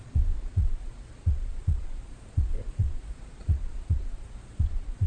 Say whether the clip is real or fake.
fake